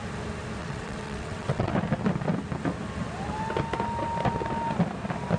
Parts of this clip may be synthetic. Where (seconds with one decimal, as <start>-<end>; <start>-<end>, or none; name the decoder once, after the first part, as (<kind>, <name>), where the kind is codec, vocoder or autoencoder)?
0.6-1.7 (vocoder, WaveNeXt)